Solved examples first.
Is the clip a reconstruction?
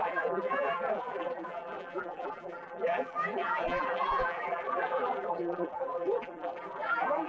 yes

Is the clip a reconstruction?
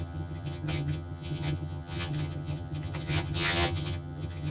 yes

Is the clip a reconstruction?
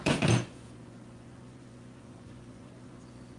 yes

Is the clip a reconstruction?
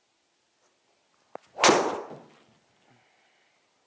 no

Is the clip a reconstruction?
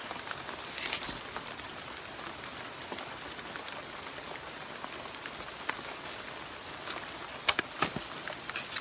no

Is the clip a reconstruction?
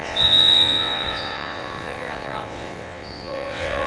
yes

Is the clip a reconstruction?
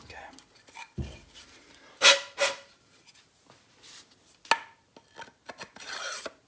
no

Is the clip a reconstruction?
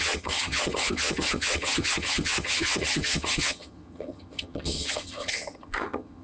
yes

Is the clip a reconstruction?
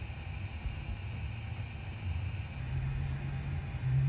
no